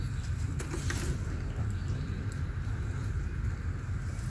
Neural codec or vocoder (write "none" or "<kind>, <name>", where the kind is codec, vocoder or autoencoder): none